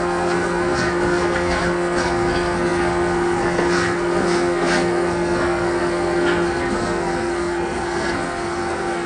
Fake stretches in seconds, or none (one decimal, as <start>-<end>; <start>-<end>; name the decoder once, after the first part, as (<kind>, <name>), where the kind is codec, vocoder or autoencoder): 0.0-9.1 (codec, SNAC)